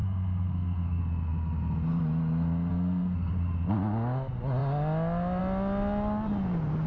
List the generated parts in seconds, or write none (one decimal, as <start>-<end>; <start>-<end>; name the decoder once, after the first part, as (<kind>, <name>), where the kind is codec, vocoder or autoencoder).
0.0-1.0 (codec, SNAC); 2.7-3.3